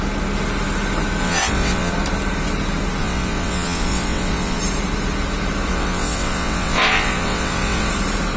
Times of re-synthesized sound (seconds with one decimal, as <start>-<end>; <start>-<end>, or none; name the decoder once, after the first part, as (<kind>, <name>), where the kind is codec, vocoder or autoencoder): 1.2-1.9 (vocoder, WaveNeXt); 3.0-4.6; 5.7-7.9